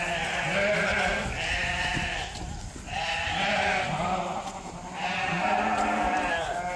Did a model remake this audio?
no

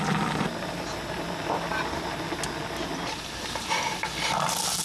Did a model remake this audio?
no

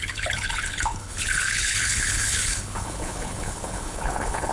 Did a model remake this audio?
yes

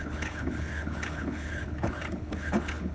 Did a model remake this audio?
yes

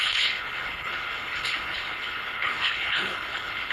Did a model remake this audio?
yes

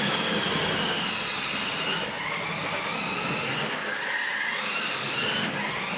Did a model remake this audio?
no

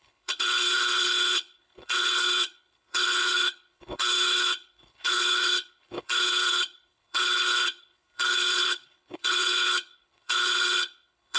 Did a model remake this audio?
yes